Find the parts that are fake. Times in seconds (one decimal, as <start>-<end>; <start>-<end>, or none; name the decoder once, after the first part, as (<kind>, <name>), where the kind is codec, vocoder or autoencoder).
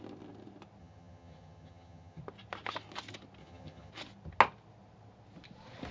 0.8-2.2 (vocoder, HiFi-GAN); 3.4-3.9